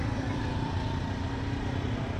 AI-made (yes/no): yes